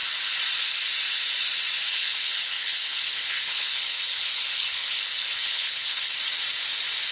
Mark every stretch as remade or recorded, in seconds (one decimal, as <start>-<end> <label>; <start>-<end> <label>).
0.0-1.9 recorded; 1.9-6.2 remade; 6.2-7.1 recorded